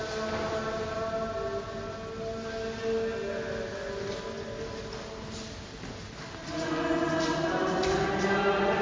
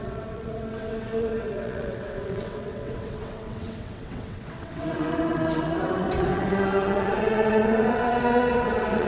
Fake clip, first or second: second